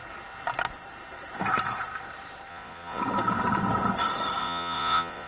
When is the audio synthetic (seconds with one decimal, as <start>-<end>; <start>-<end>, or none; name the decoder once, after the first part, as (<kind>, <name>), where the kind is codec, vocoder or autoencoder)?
2.5-3.0 (vocoder, Vocos); 4.4-5.3